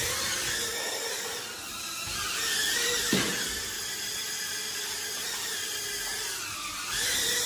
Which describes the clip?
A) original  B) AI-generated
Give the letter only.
B